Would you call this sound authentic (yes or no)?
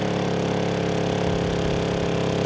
yes